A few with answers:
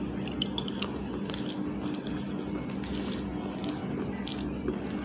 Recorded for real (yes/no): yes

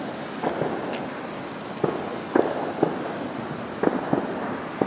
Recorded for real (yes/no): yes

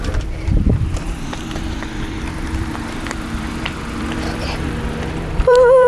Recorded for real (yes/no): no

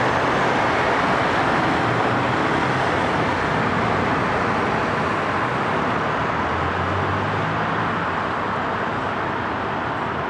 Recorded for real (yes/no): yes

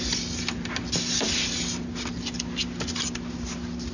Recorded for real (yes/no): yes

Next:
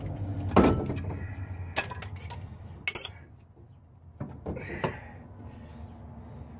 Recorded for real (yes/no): yes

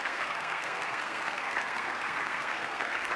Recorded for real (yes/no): no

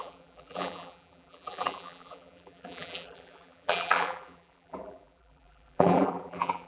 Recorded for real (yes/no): no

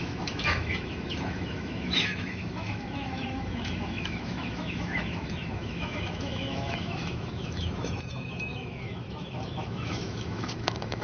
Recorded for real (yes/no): no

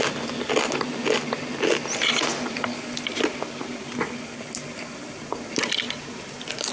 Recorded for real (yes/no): yes